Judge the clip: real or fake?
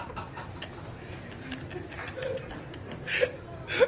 real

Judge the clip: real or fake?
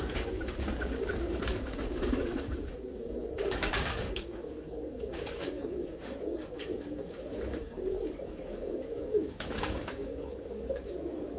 fake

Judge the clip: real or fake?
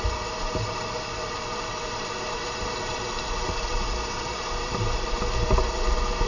real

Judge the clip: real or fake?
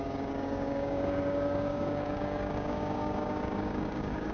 fake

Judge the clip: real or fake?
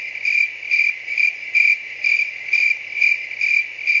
real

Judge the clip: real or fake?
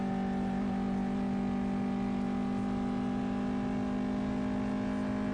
real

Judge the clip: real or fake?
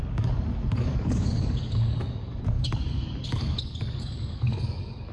fake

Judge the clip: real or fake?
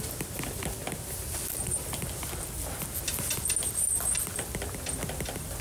real